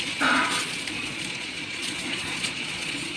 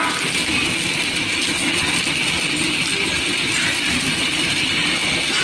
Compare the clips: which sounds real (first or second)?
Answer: second